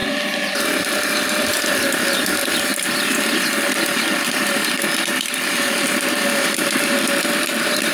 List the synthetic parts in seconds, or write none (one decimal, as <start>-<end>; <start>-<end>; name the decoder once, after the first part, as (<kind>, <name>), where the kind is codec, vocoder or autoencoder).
none